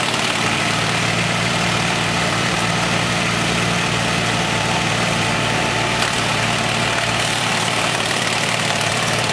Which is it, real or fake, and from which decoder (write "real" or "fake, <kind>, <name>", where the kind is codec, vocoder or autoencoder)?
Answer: fake, vocoder, BigVGAN v2